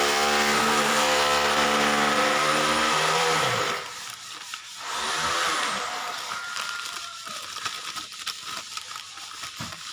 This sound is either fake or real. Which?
fake